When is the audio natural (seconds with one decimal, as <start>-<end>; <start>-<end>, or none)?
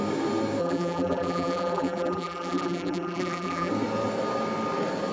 0.0-0.6; 3.7-5.1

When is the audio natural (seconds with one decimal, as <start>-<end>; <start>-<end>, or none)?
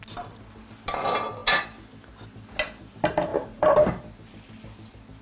0.0-5.2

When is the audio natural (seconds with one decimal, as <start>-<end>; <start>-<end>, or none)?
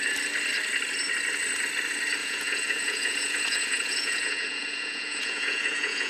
0.0-2.2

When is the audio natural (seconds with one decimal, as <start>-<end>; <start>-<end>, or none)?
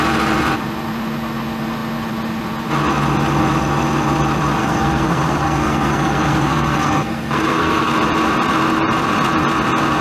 0.0-4.6; 7.9-10.0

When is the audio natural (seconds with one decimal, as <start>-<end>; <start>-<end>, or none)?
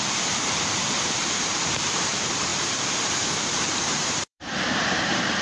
none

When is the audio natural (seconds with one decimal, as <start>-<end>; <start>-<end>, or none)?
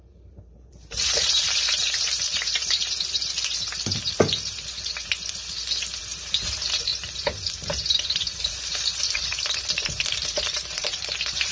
none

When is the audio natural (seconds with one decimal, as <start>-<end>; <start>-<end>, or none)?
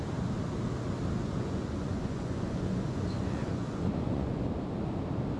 0.0-1.2; 4.4-5.4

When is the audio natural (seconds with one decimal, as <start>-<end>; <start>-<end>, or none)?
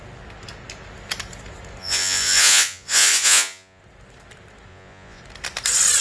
0.0-1.8; 3.8-4.7; 5.2-6.0